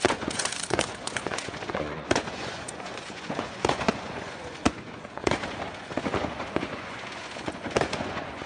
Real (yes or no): no